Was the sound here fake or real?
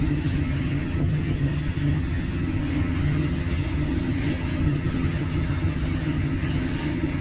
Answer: fake